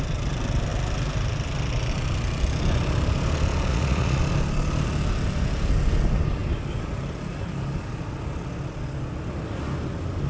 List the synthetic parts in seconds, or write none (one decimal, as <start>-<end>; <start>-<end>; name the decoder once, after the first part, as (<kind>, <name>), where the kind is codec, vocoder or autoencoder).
3.7-4.2 (vocoder, Vocos)